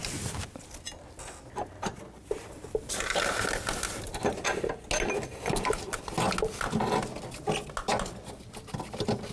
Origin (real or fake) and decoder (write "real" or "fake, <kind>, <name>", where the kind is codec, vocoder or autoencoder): real